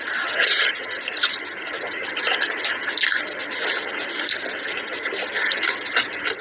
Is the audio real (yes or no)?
yes